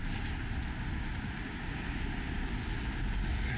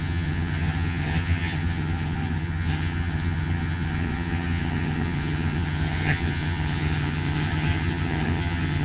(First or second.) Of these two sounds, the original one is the first